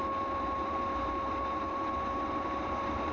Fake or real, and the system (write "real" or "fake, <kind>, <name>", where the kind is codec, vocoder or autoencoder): fake, vocoder, BigVGAN v2